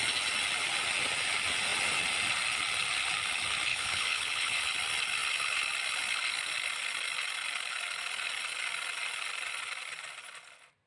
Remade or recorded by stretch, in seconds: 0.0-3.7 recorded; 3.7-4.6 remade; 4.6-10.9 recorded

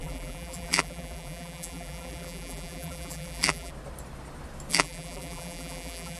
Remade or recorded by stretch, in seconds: 0.0-3.7 remade; 3.7-4.7 recorded; 4.7-6.2 remade

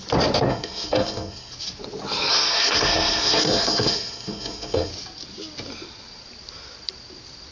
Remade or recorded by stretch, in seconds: 0.0-0.5 recorded; 0.5-1.5 remade; 1.5-2.3 recorded; 2.3-4.9 remade; 4.9-7.5 recorded

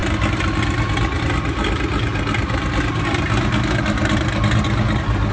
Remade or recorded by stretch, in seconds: 0.0-5.3 recorded